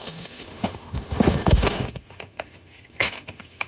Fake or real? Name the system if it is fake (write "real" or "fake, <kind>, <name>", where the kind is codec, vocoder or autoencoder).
fake, autoencoder, DAC-VAE